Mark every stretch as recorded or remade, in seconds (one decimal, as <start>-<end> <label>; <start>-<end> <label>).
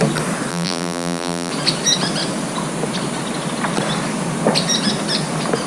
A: 0.0-0.5 recorded; 0.5-1.5 remade; 1.5-5.7 recorded